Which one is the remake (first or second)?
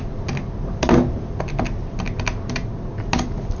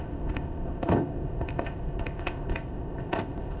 second